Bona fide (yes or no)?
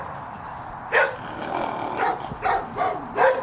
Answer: yes